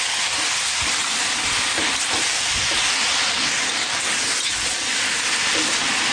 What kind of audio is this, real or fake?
real